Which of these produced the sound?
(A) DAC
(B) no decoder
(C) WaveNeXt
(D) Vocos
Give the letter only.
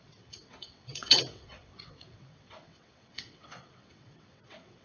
C